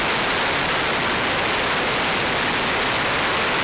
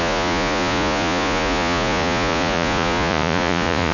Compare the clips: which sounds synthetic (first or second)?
second